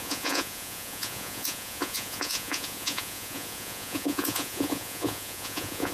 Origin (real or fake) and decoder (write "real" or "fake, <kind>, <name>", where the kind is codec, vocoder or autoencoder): fake, vocoder, Vocos